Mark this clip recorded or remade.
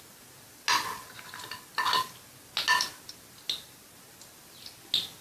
recorded